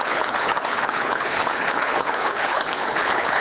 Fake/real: fake